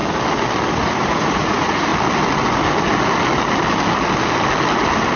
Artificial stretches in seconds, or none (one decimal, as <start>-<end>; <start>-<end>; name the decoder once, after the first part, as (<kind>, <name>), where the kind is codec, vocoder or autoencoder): 0.7-1.9 (vocoder, Vocos)